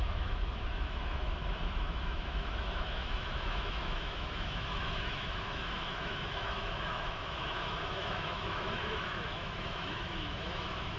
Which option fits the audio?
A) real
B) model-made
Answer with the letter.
B